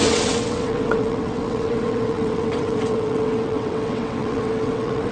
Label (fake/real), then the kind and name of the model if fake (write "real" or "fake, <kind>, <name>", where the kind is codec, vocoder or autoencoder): fake, vocoder, WaveNeXt